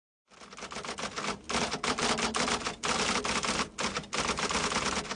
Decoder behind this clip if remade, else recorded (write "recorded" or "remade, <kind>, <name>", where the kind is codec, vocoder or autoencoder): recorded